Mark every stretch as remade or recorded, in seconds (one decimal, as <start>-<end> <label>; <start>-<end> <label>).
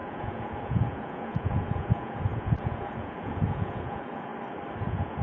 0.0-4.3 remade; 4.3-4.8 recorded; 4.8-5.2 remade